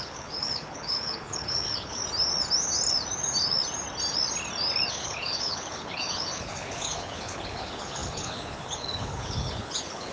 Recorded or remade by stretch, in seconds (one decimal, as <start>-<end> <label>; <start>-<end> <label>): 0.0-2.0 remade; 2.0-4.9 recorded; 4.9-10.1 remade